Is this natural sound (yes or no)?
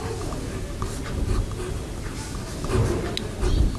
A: yes